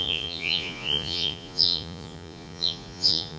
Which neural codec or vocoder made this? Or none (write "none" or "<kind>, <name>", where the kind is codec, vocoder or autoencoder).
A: vocoder, Vocos